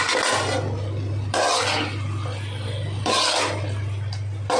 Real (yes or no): yes